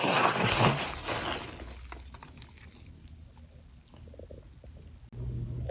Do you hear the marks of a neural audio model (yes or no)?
no